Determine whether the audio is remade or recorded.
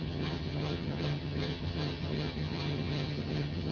remade